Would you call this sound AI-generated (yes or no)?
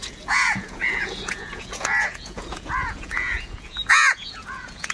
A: yes